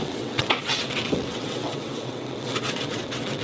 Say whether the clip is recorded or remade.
remade